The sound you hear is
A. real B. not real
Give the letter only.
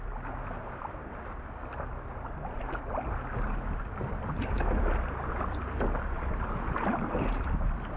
A